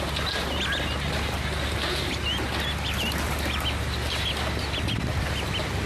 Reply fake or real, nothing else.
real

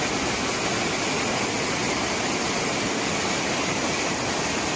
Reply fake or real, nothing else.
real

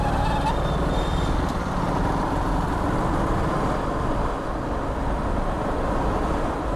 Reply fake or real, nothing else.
real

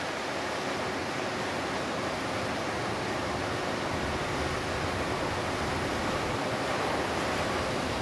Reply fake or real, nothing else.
real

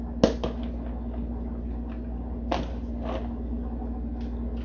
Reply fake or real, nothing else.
real